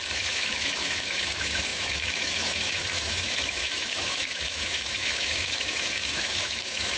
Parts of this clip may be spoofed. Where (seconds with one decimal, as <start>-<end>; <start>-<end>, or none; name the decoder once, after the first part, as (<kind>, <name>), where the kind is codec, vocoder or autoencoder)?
0.0-7.0 (autoencoder, DAC-VAE)